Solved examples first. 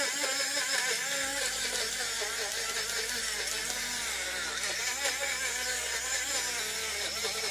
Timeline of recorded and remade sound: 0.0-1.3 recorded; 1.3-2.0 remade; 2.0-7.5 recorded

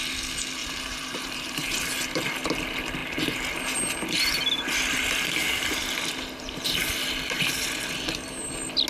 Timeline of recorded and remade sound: 0.0-0.6 recorded; 0.6-1.8 remade; 1.8-8.9 recorded

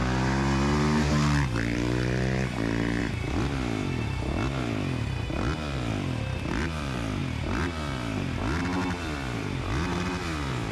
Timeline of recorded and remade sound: 0.0-10.7 recorded

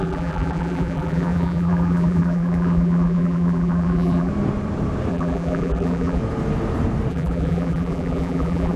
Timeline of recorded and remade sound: 0.0-4.3 remade; 4.3-5.1 recorded; 5.1-6.2 remade; 6.2-7.1 recorded; 7.1-8.8 remade

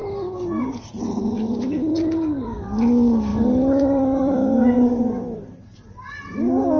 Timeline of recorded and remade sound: 0.0-3.3 recorded; 3.3-5.4 remade; 5.4-6.8 recorded